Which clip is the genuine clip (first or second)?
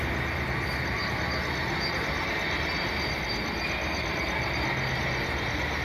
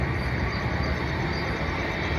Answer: first